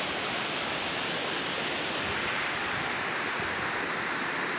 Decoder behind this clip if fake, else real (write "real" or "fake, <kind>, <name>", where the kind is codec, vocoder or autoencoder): real